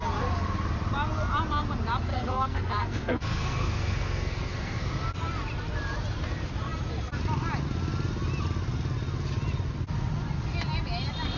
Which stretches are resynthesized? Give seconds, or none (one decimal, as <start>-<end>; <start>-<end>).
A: 2.1-4.9